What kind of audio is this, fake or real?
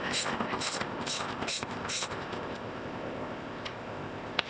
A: fake